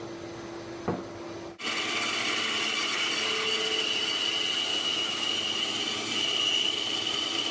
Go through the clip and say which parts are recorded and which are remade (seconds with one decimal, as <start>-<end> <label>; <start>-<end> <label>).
0.0-4.7 recorded; 4.7-5.3 remade; 5.3-7.5 recorded